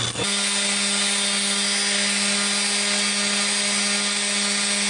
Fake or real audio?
real